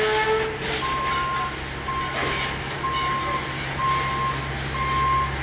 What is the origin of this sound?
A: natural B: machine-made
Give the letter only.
A